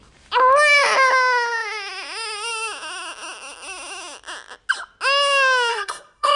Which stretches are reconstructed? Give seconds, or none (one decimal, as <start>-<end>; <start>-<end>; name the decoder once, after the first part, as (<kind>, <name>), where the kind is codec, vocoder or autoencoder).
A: 5.7-6.4 (codec, SNAC)